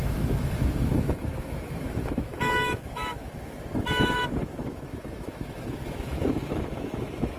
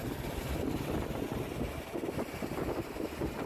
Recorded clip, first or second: second